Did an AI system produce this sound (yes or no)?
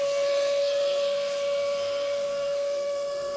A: yes